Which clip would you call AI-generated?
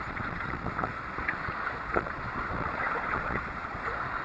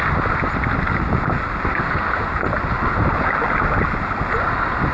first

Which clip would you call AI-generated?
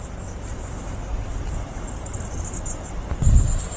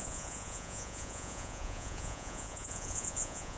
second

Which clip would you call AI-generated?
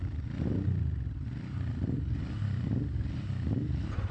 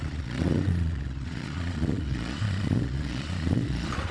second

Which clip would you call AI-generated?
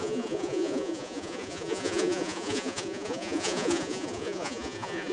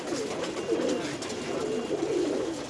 first